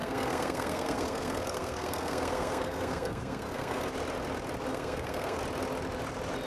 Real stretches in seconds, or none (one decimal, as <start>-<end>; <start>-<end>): 3.9-4.7; 5.4-6.5